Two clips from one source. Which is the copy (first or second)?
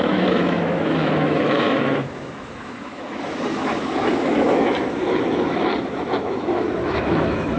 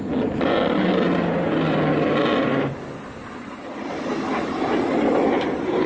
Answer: first